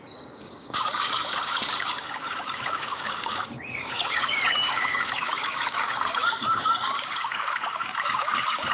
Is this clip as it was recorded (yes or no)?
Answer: no